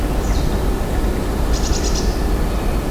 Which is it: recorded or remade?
recorded